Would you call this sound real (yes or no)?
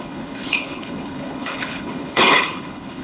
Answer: no